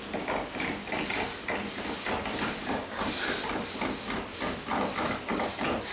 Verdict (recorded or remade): recorded